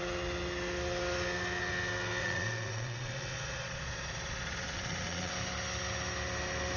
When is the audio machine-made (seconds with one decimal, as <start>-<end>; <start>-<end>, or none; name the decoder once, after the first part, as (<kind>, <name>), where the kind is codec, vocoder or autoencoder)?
2.2-5.3 (vocoder, Vocos)